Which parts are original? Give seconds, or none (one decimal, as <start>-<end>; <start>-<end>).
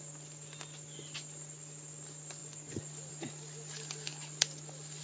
0.0-5.0